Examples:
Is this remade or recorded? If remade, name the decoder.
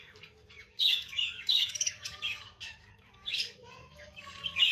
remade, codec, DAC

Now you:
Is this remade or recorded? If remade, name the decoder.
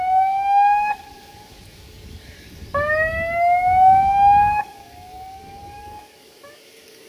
remade, codec, DAC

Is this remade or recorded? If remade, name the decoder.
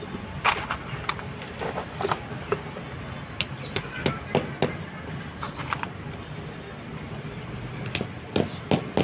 recorded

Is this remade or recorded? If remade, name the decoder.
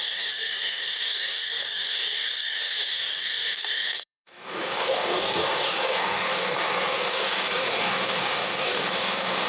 remade, codec, DAC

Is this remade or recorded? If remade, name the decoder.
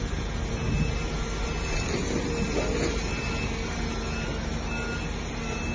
recorded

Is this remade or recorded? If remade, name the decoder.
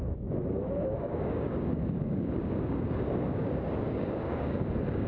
remade, codec, DAC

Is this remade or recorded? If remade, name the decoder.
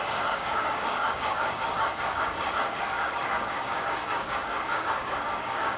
remade, codec, DAC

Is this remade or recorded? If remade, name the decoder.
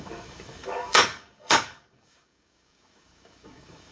remade, codec, DAC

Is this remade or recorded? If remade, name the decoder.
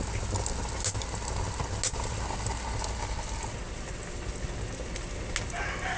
recorded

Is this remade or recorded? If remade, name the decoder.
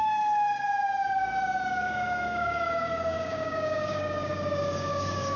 remade, codec, DAC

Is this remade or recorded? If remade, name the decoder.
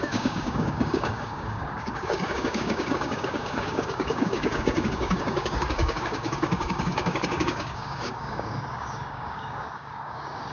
remade, codec, DAC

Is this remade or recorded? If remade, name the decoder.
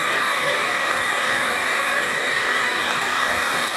remade, codec, DAC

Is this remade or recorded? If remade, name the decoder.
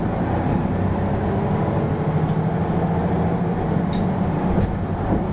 recorded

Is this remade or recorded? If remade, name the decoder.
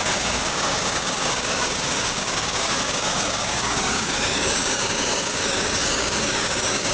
remade, codec, DAC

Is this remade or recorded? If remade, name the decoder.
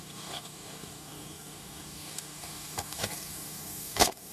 remade, codec, DAC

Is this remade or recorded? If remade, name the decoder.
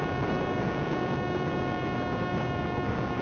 remade, codec, DAC